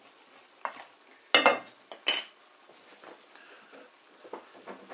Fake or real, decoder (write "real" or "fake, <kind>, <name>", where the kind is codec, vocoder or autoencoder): real